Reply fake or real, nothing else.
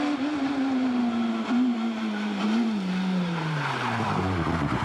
fake